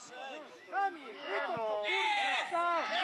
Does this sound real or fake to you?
fake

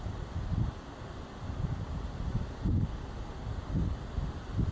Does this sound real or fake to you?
real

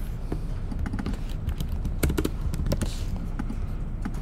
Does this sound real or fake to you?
real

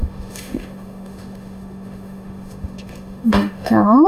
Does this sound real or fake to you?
fake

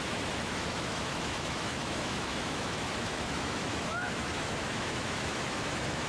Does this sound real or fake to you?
fake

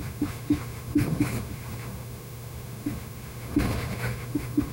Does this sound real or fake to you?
fake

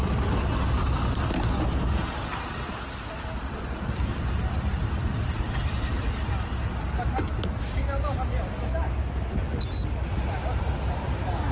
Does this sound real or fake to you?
real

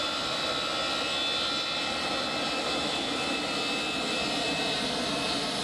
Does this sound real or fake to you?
real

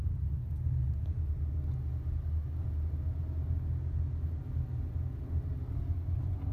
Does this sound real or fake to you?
real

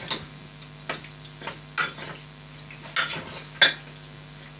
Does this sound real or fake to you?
real